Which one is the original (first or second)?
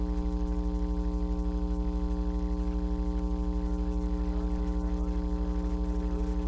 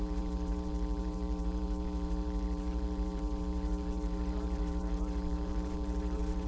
first